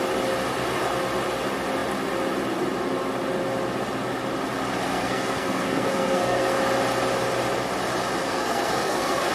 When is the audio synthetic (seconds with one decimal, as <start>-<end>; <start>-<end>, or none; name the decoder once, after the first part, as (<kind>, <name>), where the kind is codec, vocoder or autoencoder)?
4.9-6.6 (codec, SNAC); 8.2-9.3